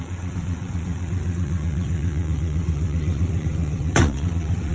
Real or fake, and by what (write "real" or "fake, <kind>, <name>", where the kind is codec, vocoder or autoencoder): fake, vocoder, WaveNeXt